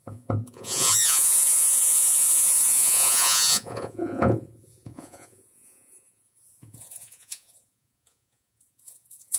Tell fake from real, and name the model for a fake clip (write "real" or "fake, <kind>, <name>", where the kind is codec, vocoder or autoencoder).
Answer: fake, vocoder, Vocos